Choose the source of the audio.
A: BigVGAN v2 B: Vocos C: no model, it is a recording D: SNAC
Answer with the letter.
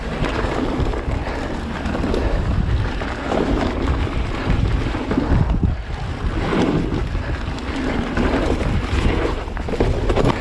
C